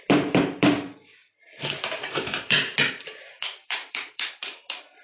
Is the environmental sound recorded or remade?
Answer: remade